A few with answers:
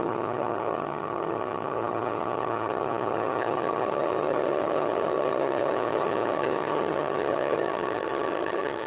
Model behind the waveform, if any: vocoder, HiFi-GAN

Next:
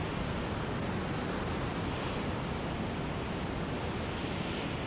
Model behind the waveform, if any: none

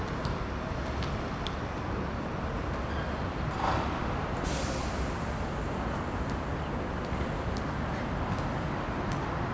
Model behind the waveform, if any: none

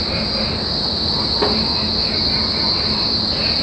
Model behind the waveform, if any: none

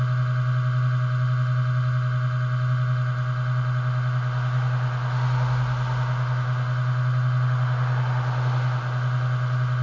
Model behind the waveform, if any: none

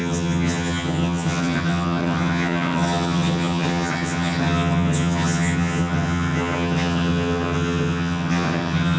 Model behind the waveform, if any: vocoder, HiFi-GAN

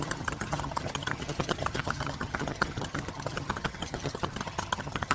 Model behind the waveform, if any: vocoder, HiFi-GAN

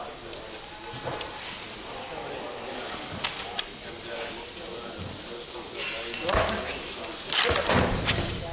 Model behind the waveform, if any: none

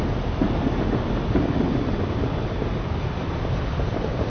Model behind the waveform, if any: none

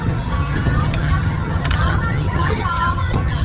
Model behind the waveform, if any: vocoder, HiFi-GAN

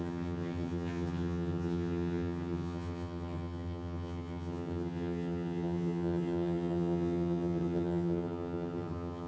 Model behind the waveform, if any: vocoder, HiFi-GAN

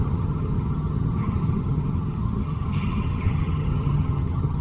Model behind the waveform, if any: vocoder, HiFi-GAN